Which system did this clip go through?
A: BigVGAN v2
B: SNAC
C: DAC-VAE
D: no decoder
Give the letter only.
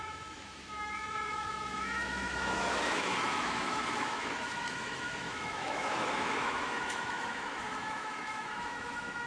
C